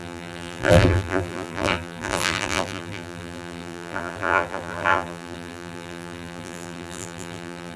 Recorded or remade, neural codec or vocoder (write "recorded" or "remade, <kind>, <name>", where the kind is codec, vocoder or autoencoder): remade, vocoder, BigVGAN v2